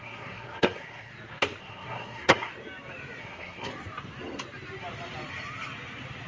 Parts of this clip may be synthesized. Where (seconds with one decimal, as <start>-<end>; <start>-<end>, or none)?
0.0-1.1; 1.6-2.5; 3.2-3.7